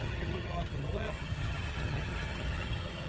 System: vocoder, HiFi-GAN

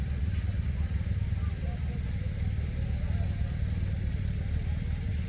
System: none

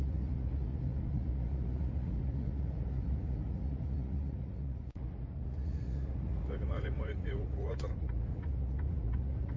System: vocoder, Vocos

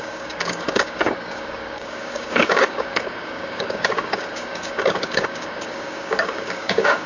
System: codec, DAC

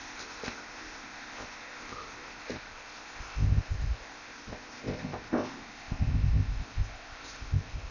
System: codec, ZipCodec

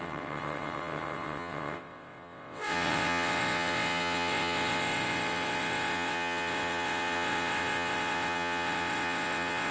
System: vocoder, WaveNeXt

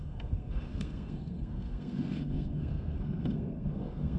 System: codec, SNAC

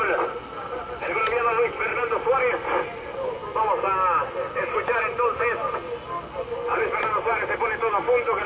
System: none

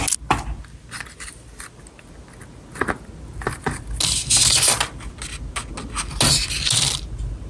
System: none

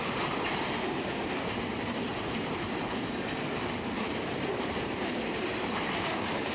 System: vocoder, BigVGAN v2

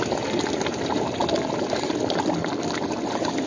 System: none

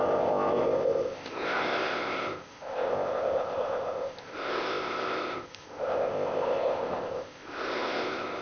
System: codec, ZipCodec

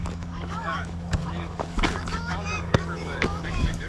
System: codec, DAC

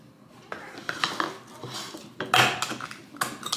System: none